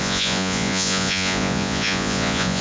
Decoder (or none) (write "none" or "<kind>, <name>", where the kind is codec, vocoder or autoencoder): vocoder, Vocos